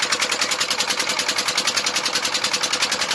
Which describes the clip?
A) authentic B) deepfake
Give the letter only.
A